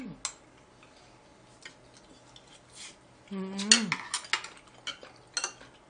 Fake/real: real